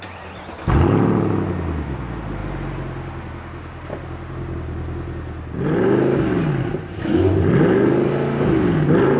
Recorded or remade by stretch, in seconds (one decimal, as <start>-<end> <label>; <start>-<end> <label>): 0.0-9.2 recorded